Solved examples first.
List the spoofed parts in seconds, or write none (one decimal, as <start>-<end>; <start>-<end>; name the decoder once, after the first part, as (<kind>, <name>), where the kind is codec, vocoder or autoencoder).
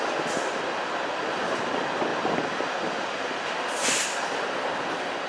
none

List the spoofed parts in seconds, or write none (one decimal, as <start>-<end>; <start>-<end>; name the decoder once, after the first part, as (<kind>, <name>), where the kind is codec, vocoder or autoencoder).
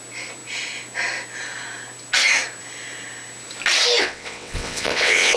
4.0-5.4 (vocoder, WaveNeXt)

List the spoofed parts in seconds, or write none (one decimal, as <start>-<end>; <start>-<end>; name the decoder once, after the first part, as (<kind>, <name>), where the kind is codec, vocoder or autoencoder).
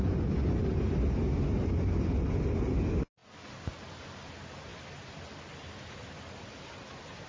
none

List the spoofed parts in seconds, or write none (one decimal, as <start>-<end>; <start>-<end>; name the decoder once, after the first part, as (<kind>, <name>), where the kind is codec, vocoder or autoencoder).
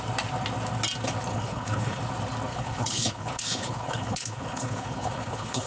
1.3-2.0 (codec, HILCodec); 2.5-5.7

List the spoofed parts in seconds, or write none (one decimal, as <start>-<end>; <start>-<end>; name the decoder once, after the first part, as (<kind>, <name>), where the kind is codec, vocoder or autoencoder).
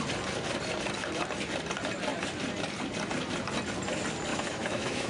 4.3-5.1 (autoencoder, DAC-VAE)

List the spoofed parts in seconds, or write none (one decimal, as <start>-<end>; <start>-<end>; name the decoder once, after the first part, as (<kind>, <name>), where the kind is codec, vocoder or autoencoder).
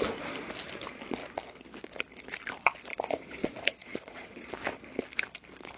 2.9-4.5 (vocoder, Vocos)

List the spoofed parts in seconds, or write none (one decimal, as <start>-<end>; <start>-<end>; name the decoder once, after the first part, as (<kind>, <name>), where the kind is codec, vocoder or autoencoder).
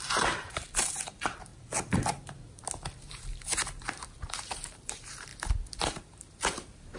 0.0-1.5 (vocoder, BigVGAN v2); 3.1-5.3; 5.8-7.0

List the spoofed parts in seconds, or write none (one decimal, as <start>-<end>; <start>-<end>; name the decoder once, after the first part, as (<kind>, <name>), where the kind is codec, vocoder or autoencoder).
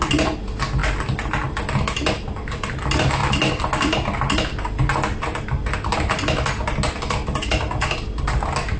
none